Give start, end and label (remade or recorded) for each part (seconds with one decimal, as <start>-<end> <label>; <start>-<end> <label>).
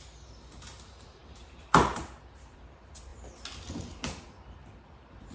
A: 0.0-3.1 remade; 3.1-3.7 recorded; 3.7-5.3 remade